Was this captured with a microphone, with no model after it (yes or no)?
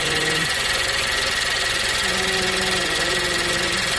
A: no